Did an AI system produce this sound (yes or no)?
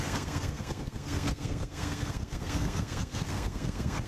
yes